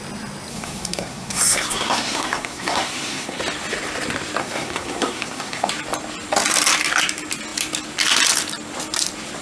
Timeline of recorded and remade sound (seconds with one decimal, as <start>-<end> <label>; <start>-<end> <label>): 0.0-0.5 recorded; 0.5-3.4 remade; 3.4-4.4 recorded; 4.4-5.7 remade; 5.7-9.4 recorded